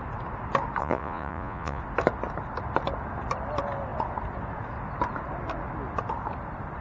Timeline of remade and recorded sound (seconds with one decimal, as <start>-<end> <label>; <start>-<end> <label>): 0.0-0.8 recorded; 0.8-1.8 remade; 1.8-6.8 recorded